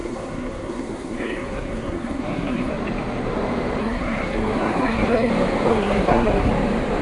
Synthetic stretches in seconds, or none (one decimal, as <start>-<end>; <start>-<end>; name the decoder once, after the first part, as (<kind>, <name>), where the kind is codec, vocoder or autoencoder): 0.0-2.7 (codec, SNAC); 3.8-5.3; 5.7-6.5